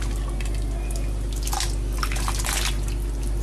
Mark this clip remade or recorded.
recorded